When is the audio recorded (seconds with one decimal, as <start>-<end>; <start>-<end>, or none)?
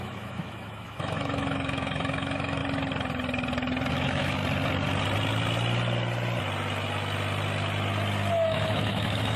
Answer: 2.6-3.9; 4.4-8.3